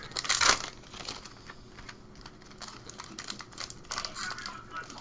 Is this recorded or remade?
recorded